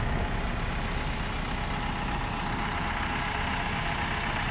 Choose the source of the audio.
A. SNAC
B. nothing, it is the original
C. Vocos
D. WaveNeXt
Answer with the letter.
B